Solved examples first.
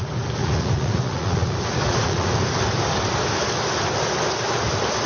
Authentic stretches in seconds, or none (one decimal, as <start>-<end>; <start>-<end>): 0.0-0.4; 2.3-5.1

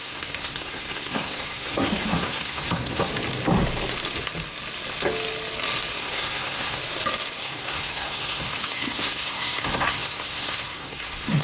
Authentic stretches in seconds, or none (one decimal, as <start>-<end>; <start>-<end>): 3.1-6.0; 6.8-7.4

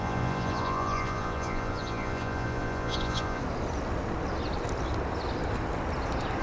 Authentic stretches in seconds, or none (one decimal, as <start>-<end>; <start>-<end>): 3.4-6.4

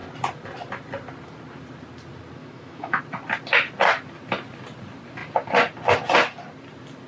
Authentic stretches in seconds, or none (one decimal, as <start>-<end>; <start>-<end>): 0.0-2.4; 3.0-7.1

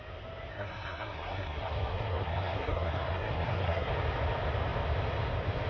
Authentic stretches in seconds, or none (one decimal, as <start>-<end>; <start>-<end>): 0.0-0.5; 3.9-5.7

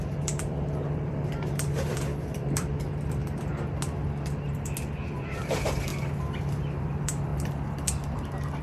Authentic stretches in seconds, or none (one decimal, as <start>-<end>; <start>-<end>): 3.2-5.1; 5.9-6.8; 7.3-8.6

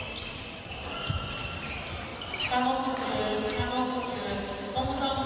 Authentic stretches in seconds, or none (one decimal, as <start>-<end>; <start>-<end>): 0.0-5.3